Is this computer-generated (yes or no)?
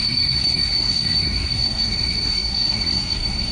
yes